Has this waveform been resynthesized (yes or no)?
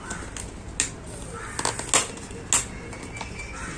no